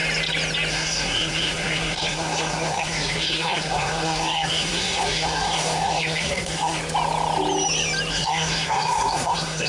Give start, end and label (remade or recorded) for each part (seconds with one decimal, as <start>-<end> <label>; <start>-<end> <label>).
0.0-0.7 recorded; 0.7-6.8 remade; 6.8-8.1 recorded; 8.1-9.7 remade